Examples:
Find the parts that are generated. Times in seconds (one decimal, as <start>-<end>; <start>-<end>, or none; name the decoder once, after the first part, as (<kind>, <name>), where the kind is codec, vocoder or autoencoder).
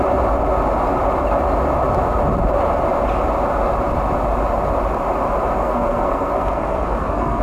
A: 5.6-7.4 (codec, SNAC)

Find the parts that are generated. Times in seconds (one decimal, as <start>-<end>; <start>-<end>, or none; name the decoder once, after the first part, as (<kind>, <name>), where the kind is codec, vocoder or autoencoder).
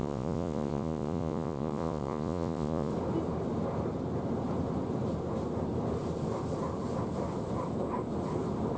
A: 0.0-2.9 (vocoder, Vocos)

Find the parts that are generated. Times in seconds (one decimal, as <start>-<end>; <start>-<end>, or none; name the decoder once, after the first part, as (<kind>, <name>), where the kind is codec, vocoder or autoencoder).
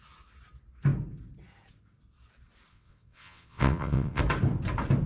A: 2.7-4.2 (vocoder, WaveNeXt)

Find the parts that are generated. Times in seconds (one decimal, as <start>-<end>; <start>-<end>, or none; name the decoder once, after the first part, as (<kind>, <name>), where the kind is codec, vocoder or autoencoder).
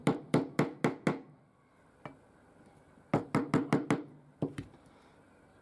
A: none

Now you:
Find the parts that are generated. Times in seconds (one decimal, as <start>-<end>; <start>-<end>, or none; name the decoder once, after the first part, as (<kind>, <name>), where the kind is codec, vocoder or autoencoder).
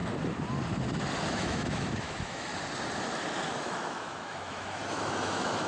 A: 1.3-2.5 (autoencoder, DAC-VAE); 3.5-5.7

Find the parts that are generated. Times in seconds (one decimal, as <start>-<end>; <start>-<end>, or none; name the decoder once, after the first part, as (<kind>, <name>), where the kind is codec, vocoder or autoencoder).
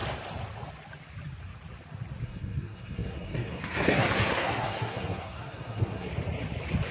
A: 2.2-6.1 (codec, SNAC)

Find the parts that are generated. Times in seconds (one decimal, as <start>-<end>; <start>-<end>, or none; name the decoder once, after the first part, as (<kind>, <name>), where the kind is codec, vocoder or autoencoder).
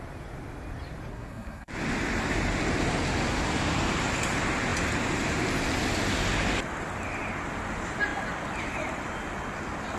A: 1.1-1.7 (codec, SNAC)